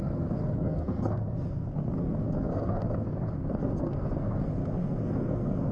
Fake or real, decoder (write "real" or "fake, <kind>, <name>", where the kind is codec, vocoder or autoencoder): fake, codec, SNAC